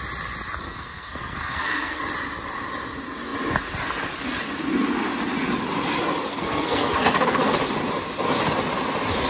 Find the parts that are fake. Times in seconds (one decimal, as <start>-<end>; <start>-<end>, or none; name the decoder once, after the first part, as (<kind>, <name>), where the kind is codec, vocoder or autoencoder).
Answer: 0.6-2.0 (codec, SNAC); 6.3-7.5